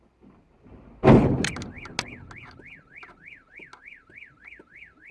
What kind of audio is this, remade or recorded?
recorded